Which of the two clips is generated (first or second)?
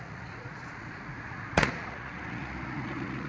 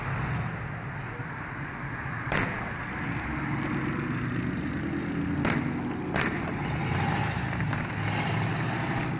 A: first